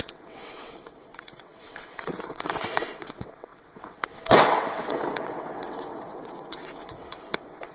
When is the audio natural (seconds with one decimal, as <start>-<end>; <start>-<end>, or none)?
none